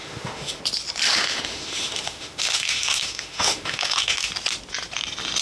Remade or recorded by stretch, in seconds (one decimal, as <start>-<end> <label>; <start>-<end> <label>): 0.0-0.6 remade; 0.6-1.1 recorded; 1.1-4.3 remade; 4.3-5.4 recorded

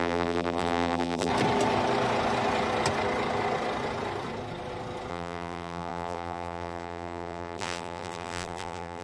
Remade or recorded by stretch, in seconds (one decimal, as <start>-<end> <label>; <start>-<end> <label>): 0.0-1.3 remade; 1.3-5.1 recorded; 5.1-9.0 remade